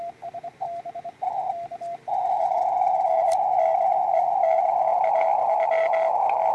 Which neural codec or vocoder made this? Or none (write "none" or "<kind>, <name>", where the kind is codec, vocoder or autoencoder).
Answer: none